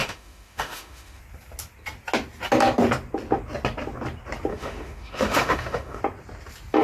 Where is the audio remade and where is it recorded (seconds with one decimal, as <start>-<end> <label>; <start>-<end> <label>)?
0.0-1.2 remade; 1.2-4.5 recorded; 4.5-6.0 remade; 6.0-6.8 recorded